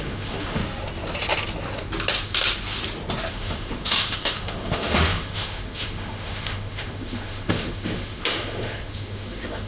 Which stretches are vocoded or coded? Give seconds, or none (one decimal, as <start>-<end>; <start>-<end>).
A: 0.0-0.6; 3.3-9.7